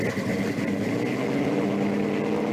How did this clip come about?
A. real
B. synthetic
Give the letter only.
A